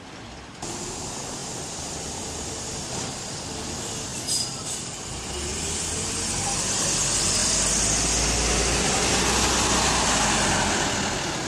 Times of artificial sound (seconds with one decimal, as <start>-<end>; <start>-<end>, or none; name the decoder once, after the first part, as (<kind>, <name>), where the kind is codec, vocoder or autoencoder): 1.4-3.4 (vocoder, BigVGAN v2); 4.1-5.0; 5.5-6.1